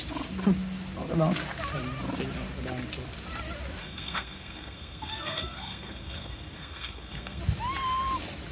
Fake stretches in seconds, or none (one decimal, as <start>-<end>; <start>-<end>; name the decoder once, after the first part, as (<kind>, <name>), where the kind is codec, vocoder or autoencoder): 3.8-7.4 (codec, SNAC)

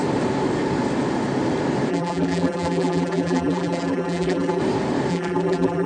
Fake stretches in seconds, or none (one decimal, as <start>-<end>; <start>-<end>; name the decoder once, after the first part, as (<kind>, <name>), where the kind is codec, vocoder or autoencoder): 1.9-4.6 (vocoder, BigVGAN v2); 5.1-5.9